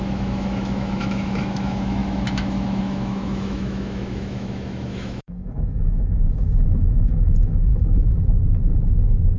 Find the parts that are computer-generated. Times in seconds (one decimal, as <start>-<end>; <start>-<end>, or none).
0.0-9.4